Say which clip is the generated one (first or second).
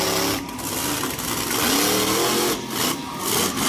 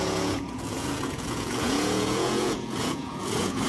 second